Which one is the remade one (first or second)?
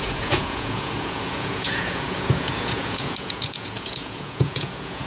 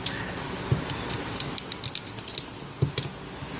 first